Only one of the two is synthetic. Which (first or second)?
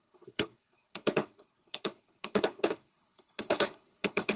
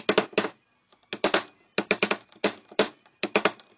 first